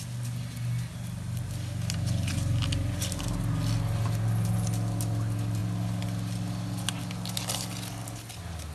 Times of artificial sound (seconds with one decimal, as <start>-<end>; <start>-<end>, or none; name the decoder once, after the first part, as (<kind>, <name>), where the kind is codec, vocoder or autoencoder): none